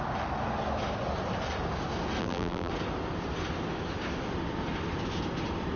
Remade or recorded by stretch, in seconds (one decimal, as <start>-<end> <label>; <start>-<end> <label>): 0.0-2.2 recorded; 2.2-2.7 remade; 2.7-5.8 recorded